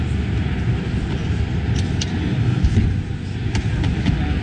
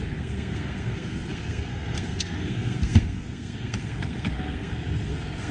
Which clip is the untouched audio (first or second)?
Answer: first